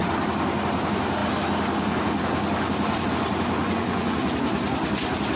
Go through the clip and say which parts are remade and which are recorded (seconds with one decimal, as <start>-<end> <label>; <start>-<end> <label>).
0.0-3.6 recorded; 3.6-4.3 remade; 4.3-5.4 recorded